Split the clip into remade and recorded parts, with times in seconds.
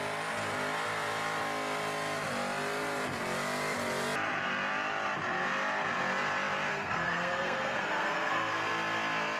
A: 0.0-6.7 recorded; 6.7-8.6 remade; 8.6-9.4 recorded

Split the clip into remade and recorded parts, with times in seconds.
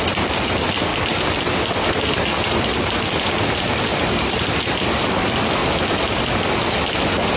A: 0.0-7.4 recorded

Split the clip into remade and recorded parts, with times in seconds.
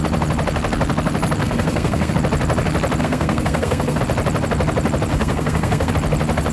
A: 0.0-1.4 recorded; 1.4-2.1 remade; 2.1-3.0 recorded; 3.0-4.0 remade; 4.0-5.1 recorded; 5.1-5.9 remade; 5.9-6.5 recorded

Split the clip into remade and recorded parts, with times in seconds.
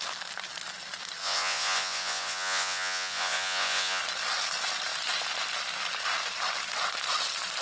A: 0.0-1.2 recorded; 1.2-4.0 remade; 4.0-7.6 recorded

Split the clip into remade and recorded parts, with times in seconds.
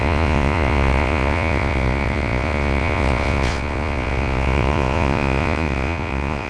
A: 0.0-6.5 remade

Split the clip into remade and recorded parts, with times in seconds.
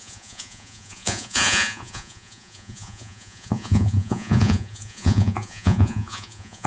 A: 0.0-6.7 remade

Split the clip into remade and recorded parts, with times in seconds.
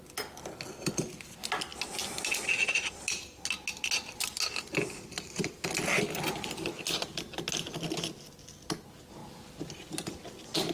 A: 0.0-10.7 recorded